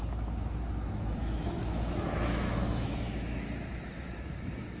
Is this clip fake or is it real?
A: fake